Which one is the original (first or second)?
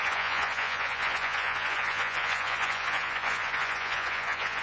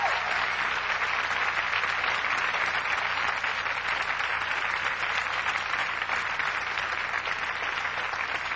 second